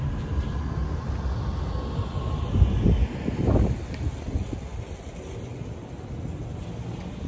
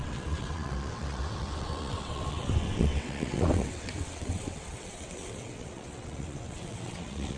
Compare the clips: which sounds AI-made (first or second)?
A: second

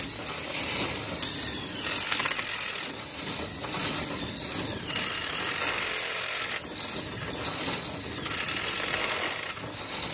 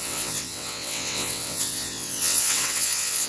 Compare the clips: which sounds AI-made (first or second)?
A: second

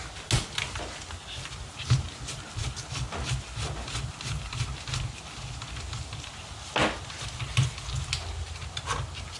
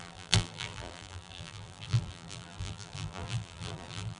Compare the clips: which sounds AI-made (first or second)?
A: second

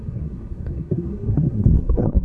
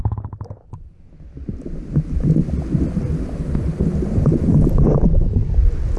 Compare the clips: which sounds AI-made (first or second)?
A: first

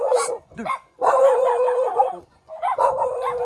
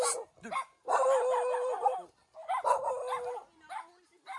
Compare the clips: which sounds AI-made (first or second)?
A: first